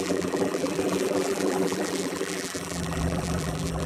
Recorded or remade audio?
remade